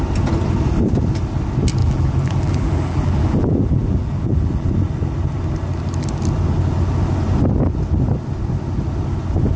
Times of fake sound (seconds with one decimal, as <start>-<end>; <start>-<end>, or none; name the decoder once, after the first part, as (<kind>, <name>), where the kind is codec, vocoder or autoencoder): 1.8-4.7 (vocoder, BigVGAN v2)